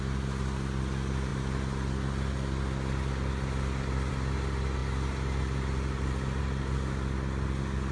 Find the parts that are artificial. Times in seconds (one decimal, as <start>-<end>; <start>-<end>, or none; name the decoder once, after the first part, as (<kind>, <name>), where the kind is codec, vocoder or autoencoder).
none